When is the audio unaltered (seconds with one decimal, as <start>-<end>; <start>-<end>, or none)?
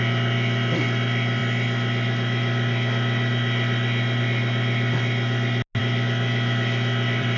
0.0-7.4